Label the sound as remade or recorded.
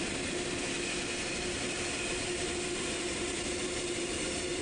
recorded